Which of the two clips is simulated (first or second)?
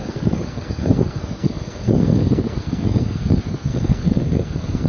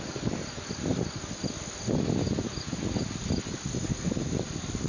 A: first